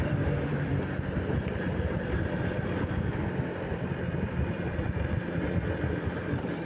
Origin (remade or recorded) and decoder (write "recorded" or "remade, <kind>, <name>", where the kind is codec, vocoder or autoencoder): remade, vocoder, BigVGAN v2